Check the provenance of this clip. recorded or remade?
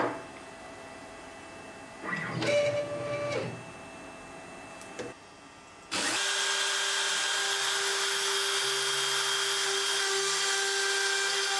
recorded